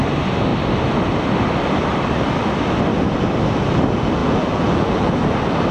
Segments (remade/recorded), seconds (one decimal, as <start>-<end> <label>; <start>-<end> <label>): 0.0-4.2 recorded; 4.2-5.1 remade; 5.1-5.7 recorded